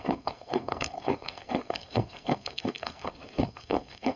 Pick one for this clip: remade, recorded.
remade